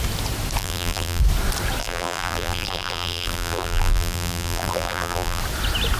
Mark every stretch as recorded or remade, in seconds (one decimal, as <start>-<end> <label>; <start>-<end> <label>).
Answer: 0.0-0.6 recorded; 0.6-1.2 remade; 1.2-1.8 recorded; 1.8-5.4 remade; 5.4-6.0 recorded